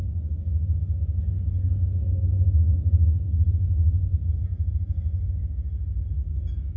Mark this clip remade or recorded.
recorded